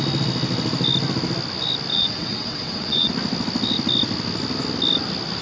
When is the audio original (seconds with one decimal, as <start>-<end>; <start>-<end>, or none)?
0.0-1.9; 3.1-5.4

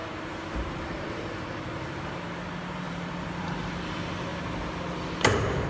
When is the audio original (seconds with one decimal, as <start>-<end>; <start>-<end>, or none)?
4.3-5.7